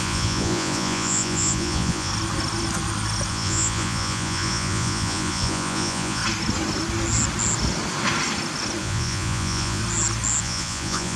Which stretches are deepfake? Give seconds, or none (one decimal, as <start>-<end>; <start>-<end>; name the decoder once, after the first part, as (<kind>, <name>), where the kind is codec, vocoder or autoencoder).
0.0-2.1 (vocoder, Vocos); 3.3-6.2; 8.8-9.8; 10.4-11.2